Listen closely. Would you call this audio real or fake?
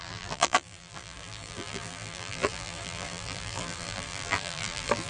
fake